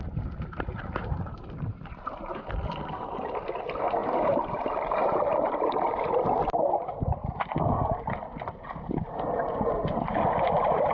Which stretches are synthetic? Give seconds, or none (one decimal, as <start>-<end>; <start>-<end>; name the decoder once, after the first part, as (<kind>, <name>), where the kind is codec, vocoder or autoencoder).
1.0-1.9 (vocoder, BigVGAN v2); 4.0-4.5; 5.3-10.9